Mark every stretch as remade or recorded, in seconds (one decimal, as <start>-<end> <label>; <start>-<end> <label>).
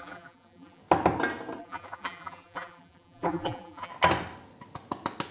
0.0-0.8 remade; 0.8-1.6 recorded; 1.6-3.9 remade; 3.9-5.3 recorded